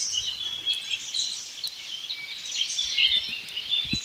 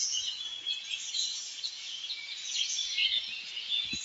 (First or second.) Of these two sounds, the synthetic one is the second